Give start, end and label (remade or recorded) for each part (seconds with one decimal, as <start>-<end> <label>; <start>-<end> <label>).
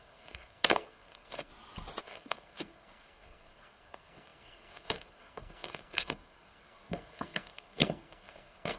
0.0-1.5 remade; 1.5-2.0 recorded; 2.0-8.8 remade